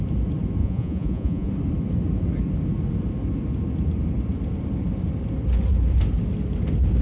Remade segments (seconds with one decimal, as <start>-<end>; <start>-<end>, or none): 0.6-1.5